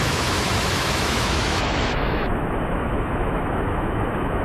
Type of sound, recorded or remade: remade